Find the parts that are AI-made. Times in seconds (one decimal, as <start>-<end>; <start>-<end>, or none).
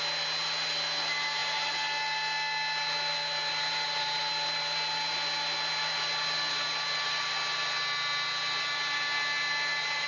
none